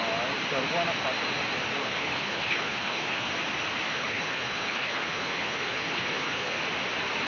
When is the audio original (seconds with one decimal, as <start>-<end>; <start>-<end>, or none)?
0.0-1.8; 3.3-3.9; 6.6-7.3

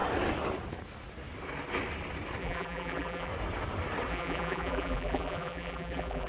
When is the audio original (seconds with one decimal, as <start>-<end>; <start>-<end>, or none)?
0.0-2.4; 3.3-4.1

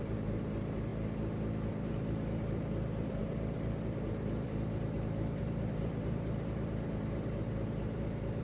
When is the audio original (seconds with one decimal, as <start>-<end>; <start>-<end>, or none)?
0.9-1.7

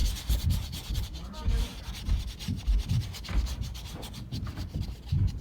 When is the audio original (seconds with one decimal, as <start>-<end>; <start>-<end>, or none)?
0.0-1.0

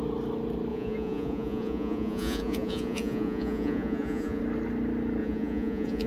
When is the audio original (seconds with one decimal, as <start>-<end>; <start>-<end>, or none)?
0.0-0.7; 4.4-5.2

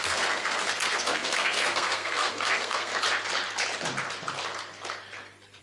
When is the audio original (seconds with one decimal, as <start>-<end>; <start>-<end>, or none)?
2.9-5.6

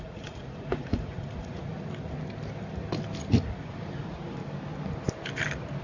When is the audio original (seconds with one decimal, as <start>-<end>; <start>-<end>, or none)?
1.7-3.3; 4.4-5.8